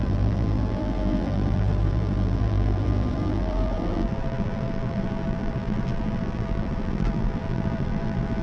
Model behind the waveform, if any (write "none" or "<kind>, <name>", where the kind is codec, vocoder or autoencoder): vocoder, BigVGAN v2